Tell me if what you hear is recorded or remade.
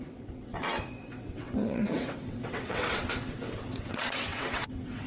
remade